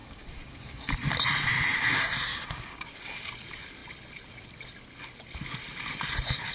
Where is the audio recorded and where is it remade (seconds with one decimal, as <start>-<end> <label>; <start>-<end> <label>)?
0.0-0.9 remade; 0.9-2.3 recorded; 2.3-3.3 remade; 3.3-6.5 recorded